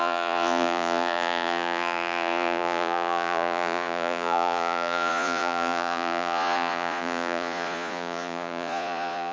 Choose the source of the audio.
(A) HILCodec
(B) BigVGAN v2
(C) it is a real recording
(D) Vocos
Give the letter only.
D